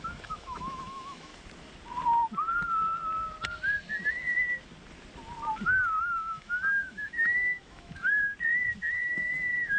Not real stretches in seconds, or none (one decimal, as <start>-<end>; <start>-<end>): 0.0-1.3; 6.0-8.3; 8.9-9.8